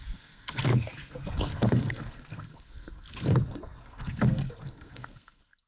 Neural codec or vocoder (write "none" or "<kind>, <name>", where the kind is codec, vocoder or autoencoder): codec, SNAC